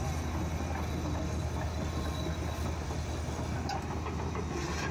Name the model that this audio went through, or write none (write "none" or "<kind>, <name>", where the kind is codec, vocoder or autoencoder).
none